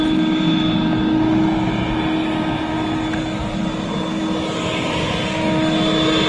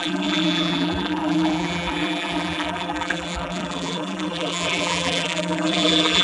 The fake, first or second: second